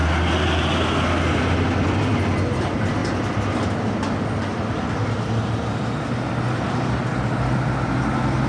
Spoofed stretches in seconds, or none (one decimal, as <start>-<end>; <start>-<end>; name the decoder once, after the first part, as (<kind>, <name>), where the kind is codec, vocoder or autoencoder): none